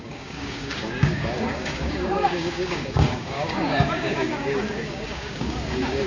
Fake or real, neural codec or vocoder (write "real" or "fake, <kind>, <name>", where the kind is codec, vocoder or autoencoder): fake, codec, DAC